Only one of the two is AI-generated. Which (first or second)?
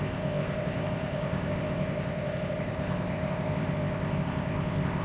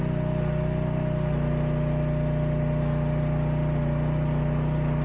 first